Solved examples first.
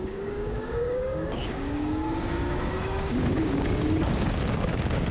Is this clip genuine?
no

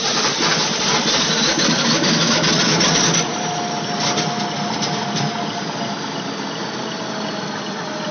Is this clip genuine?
yes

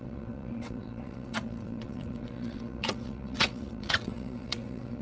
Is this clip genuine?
no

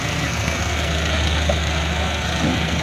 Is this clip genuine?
no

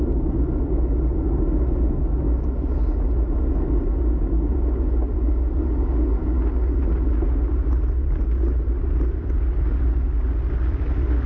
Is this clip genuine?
yes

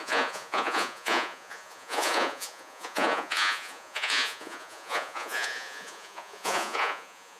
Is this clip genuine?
no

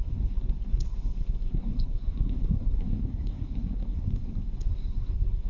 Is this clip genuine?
no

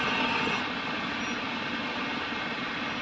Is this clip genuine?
yes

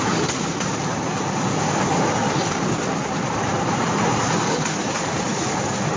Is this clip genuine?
yes